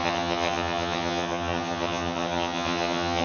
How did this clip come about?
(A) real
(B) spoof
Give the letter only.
B